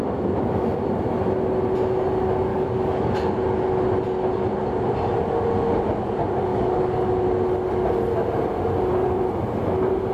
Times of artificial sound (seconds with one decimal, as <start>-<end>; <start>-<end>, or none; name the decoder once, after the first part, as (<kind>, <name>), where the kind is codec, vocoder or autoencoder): 2.5-3.1 (codec, DAC); 6.5-7.1